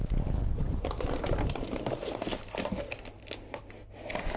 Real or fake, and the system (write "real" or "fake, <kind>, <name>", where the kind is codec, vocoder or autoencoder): real